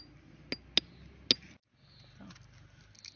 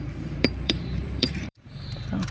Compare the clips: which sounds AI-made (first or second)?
second